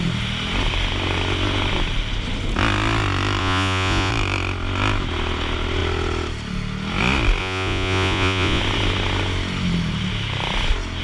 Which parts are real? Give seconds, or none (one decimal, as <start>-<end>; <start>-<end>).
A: 0.0-3.4; 4.1-7.4; 8.6-11.0